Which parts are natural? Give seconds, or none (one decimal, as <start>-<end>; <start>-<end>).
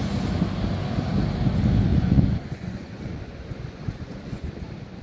0.0-1.9; 4.5-5.0